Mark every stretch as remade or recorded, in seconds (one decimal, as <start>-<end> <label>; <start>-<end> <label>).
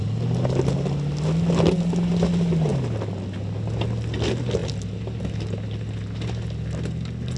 0.0-7.4 recorded